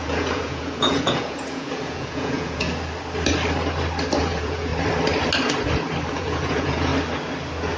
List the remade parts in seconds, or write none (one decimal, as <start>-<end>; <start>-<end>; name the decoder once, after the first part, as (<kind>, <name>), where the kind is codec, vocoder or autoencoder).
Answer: 0.0-2.7 (vocoder, Vocos); 4.2-4.7; 6.1-6.9